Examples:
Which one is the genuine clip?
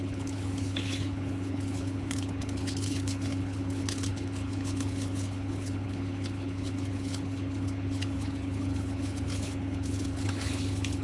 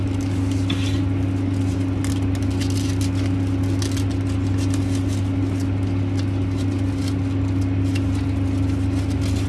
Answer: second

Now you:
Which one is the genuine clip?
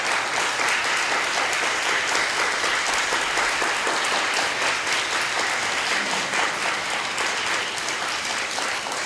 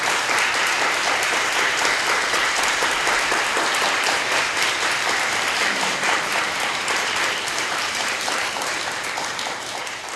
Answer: first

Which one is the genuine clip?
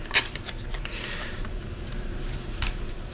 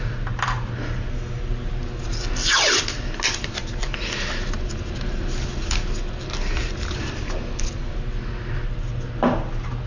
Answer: second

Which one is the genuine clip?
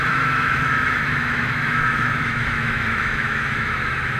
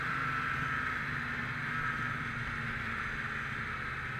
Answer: second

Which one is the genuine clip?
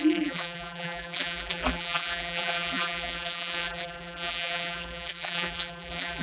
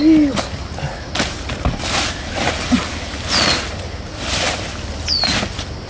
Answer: second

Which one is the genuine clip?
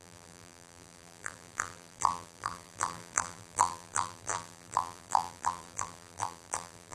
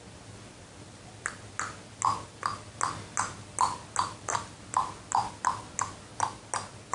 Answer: second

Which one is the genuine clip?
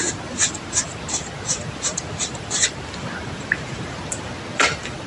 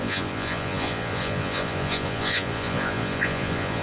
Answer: first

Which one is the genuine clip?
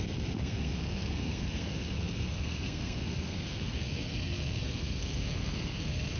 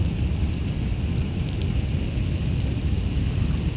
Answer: second